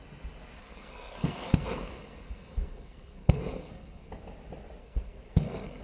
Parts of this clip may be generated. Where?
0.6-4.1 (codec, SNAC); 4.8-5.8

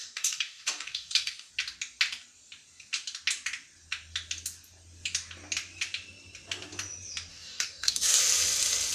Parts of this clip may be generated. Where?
0.0-1.5 (codec, DAC); 7.3-8.2

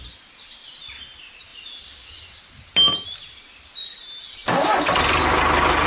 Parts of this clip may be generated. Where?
none